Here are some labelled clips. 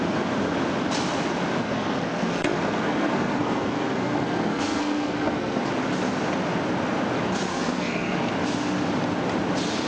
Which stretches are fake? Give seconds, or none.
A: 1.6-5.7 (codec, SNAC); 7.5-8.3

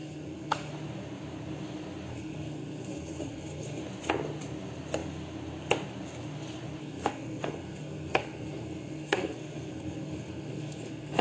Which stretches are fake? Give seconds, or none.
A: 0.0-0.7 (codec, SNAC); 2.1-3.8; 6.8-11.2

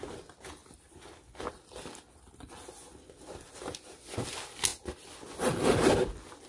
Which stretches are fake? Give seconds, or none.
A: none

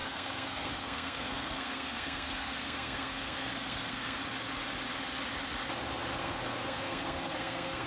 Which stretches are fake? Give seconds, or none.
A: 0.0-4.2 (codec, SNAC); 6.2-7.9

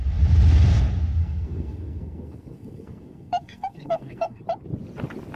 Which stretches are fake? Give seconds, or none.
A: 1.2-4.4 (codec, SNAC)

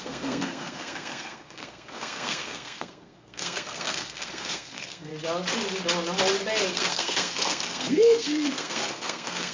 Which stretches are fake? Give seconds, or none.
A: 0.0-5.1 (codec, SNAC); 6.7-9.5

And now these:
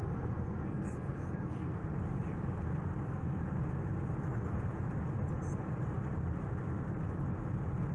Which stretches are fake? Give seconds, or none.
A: 0.0-1.8 (codec, SNAC); 3.0-3.4

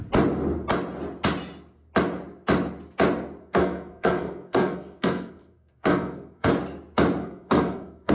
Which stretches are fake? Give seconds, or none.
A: 3.4-6.5 (codec, SNAC); 7.2-8.1